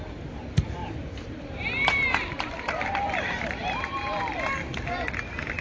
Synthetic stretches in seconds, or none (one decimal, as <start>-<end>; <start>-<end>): 0.8-4.2